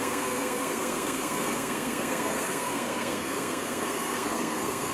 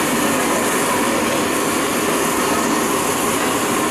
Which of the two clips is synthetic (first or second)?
first